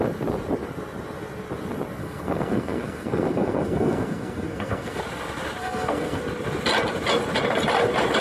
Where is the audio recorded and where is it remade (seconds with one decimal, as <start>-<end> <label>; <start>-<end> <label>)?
0.0-2.0 recorded; 2.0-5.0 remade; 5.0-5.6 recorded; 5.6-6.2 remade; 6.2-8.2 recorded